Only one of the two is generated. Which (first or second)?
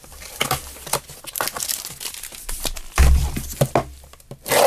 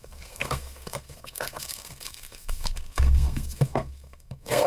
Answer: second